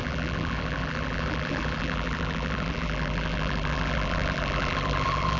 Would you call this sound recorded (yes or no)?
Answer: no